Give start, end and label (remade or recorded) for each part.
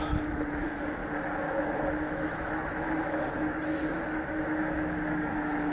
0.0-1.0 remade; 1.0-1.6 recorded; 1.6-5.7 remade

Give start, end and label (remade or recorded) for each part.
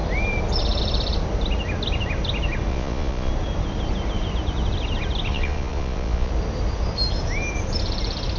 0.0-2.7 recorded; 2.7-3.3 remade; 3.3-5.3 recorded; 5.3-6.3 remade; 6.3-8.4 recorded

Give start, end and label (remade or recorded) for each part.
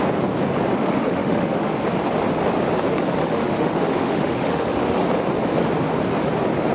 0.0-0.7 recorded; 0.7-1.8 remade; 1.8-3.2 recorded; 3.2-5.0 remade; 5.0-6.7 recorded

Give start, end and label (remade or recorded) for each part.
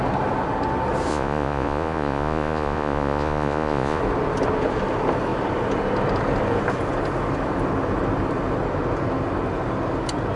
0.0-1.1 recorded; 1.1-4.0 remade; 4.0-10.4 recorded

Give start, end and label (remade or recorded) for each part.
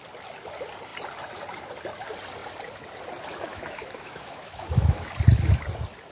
0.0-3.5 recorded; 3.5-5.1 remade; 5.1-6.1 recorded